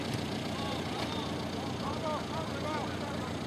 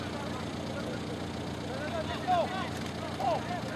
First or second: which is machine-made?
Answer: first